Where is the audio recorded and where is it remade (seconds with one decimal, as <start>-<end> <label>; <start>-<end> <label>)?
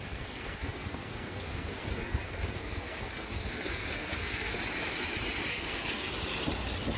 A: 0.0-4.5 remade; 4.5-5.5 recorded; 5.5-6.1 remade; 6.1-7.0 recorded